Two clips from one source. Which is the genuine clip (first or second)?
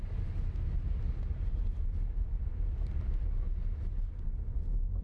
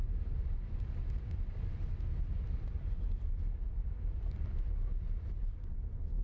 first